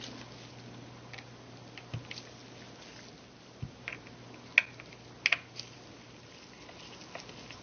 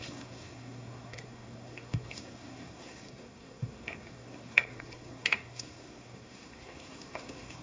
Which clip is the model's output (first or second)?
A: second